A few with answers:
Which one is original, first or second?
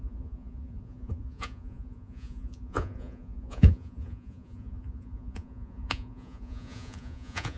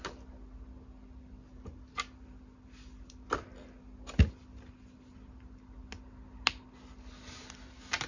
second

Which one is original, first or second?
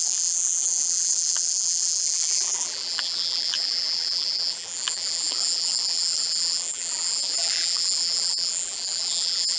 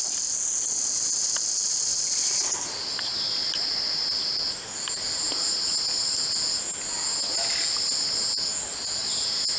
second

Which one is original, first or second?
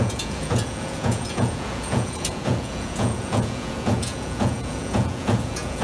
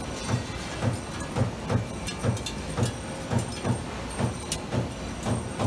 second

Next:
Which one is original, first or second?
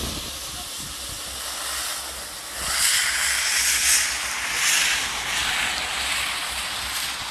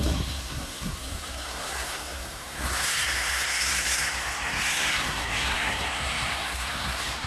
first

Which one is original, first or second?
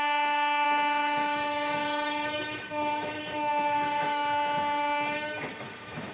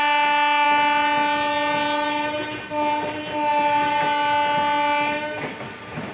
second